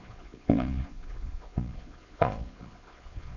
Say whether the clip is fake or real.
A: fake